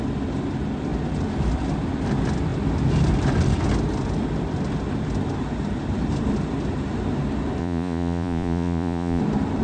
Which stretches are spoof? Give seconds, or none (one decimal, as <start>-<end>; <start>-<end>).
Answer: 7.6-9.2